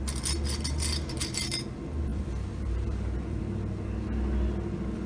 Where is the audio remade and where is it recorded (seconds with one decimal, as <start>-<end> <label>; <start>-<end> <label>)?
0.0-2.1 recorded; 2.1-3.4 remade; 3.4-5.1 recorded